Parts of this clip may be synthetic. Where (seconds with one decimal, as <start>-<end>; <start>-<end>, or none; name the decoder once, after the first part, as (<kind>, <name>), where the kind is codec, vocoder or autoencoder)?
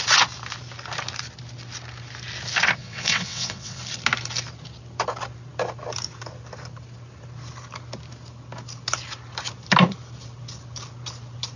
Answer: 2.8-3.8 (vocoder, WaveNeXt)